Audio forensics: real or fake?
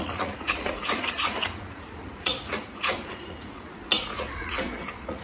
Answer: fake